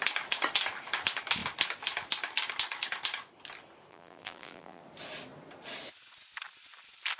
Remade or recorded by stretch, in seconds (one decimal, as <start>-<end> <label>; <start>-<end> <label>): 0.0-3.9 recorded; 3.9-4.8 remade; 4.8-7.2 recorded

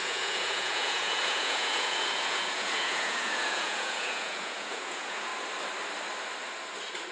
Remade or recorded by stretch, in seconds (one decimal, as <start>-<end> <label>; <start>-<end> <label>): 0.0-5.3 remade; 5.3-7.1 recorded

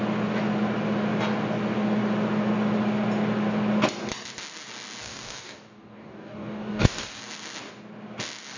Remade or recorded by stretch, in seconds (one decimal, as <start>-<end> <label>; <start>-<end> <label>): 0.0-5.0 recorded; 5.0-7.2 remade; 7.2-8.6 recorded

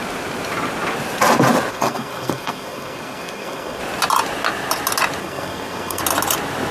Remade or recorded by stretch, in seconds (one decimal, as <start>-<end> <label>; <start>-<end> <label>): 0.0-1.7 recorded; 1.7-3.8 remade; 3.8-5.2 recorded; 5.2-6.0 remade; 6.0-6.7 recorded

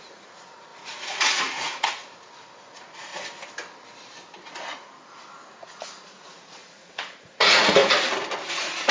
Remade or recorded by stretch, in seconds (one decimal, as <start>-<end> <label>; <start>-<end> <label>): 0.0-3.1 remade; 3.1-4.4 recorded; 4.4-7.8 remade; 7.8-8.5 recorded; 8.5-8.9 remade

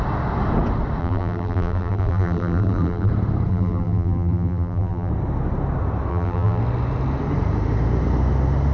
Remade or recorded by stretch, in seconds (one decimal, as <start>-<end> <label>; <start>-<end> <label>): 0.0-1.0 recorded; 1.0-3.1 remade; 3.1-3.5 recorded; 3.5-5.1 remade; 5.1-6.1 recorded; 6.1-6.6 remade; 6.6-8.7 recorded

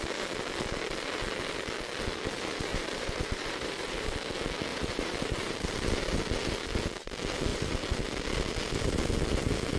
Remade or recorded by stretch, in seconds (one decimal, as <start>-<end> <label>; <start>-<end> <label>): 0.0-2.7 recorded; 2.7-4.3 remade; 4.3-4.7 recorded; 4.7-5.7 remade; 5.7-7.5 recorded; 7.5-8.2 remade; 8.2-9.8 recorded

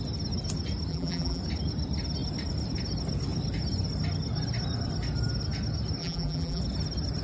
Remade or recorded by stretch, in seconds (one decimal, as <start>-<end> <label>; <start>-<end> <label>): 0.0-0.9 recorded; 0.9-1.4 remade; 1.4-6.0 recorded; 6.0-6.6 remade; 6.6-7.2 recorded